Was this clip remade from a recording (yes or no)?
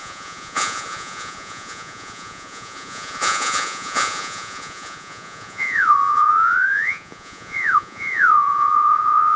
yes